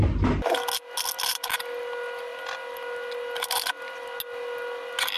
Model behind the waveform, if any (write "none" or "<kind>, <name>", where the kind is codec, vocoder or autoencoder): none